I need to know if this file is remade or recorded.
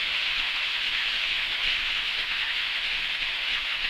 remade